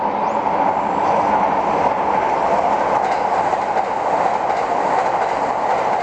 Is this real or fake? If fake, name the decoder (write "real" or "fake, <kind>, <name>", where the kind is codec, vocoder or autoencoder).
real